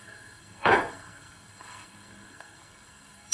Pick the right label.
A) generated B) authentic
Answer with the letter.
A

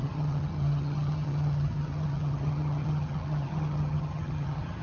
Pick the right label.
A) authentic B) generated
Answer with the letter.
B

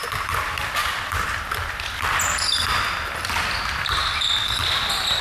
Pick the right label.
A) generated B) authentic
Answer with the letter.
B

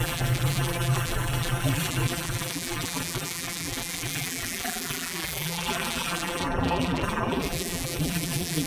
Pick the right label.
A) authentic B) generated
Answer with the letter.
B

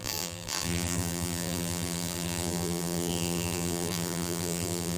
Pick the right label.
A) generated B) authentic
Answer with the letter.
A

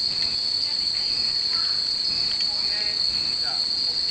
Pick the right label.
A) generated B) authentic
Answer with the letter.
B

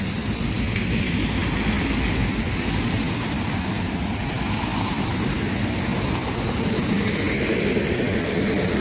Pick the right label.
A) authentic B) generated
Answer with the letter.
A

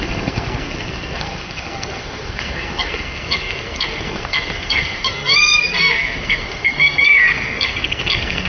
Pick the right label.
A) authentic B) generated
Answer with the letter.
B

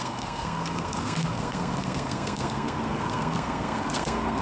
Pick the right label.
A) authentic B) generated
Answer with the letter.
B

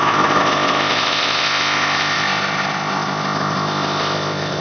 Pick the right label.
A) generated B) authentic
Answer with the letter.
A